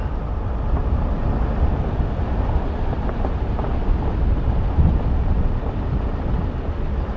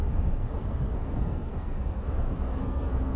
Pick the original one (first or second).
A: first